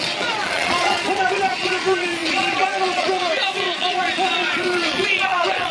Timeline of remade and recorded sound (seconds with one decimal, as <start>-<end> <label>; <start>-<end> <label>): 0.0-5.7 remade